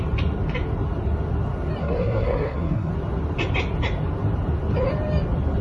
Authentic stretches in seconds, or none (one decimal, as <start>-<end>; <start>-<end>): 0.0-1.8; 2.9-5.6